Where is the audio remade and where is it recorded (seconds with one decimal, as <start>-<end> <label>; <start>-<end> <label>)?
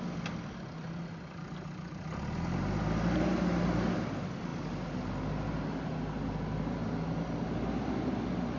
0.0-8.6 recorded